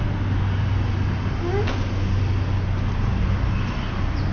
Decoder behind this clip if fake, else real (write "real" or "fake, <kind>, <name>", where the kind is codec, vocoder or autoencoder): real